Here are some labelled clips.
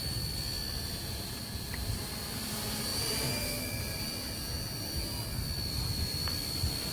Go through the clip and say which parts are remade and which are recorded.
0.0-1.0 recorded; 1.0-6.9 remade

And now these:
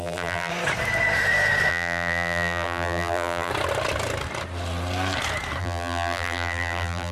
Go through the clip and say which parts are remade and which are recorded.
0.0-0.5 remade; 0.5-1.7 recorded; 1.7-3.5 remade; 3.5-5.6 recorded; 5.6-7.1 remade

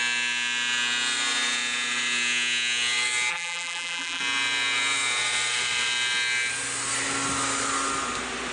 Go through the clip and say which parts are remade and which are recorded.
0.0-3.3 recorded; 3.3-4.2 remade; 4.2-8.5 recorded

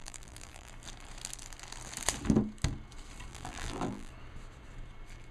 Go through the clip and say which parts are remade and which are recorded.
0.0-0.7 remade; 0.7-3.3 recorded; 3.3-4.1 remade; 4.1-5.3 recorded

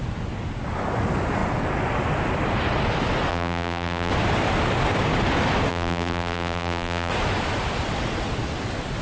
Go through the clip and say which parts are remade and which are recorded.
0.0-3.3 recorded; 3.3-4.1 remade; 4.1-5.7 recorded; 5.7-7.1 remade; 7.1-9.0 recorded

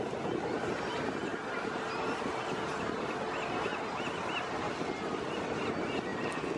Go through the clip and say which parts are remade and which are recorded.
0.0-6.6 recorded

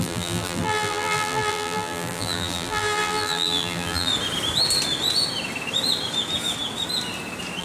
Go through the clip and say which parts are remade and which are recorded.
0.0-4.1 remade; 4.1-7.6 recorded

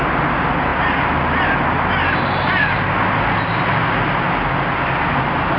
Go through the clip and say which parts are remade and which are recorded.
0.0-5.6 recorded